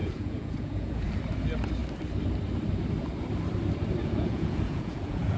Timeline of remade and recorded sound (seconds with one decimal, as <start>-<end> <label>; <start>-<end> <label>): 0.0-1.1 remade; 1.1-4.0 recorded; 4.0-5.4 remade